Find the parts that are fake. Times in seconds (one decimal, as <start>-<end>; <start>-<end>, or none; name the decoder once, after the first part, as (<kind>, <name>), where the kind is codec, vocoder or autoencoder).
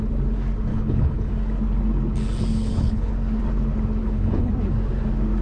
0.7-1.3 (codec, HILCodec); 2.5-3.1; 4.0-4.5